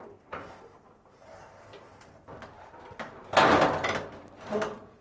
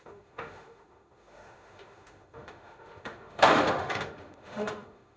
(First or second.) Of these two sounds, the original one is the first